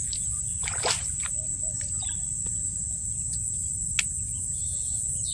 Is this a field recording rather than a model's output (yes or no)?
yes